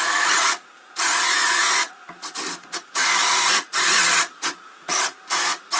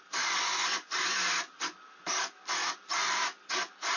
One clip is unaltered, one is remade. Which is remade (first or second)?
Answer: first